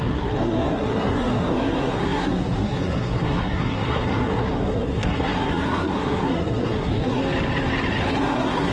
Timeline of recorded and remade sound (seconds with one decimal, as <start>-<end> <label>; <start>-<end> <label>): 0.0-7.2 remade; 7.2-8.1 recorded; 8.1-8.7 remade